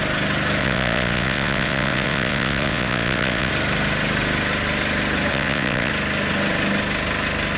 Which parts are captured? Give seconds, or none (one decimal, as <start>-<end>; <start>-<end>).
0.0-0.6; 3.5-5.3; 5.9-7.6